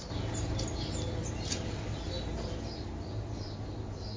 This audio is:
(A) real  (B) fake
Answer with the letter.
A